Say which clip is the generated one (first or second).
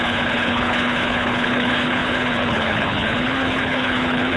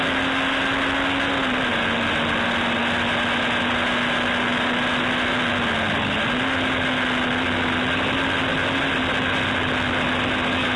first